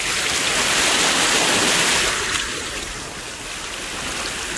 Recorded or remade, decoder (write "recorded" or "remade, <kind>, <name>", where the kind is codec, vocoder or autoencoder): recorded